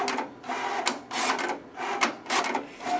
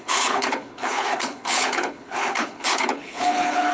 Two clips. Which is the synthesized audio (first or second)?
second